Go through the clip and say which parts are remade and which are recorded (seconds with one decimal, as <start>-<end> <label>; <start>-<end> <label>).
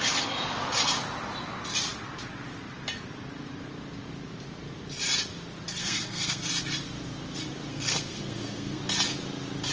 0.0-5.8 recorded; 5.8-6.5 remade; 6.5-7.7 recorded; 7.7-8.8 remade; 8.8-9.7 recorded